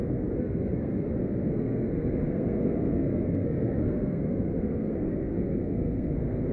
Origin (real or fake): fake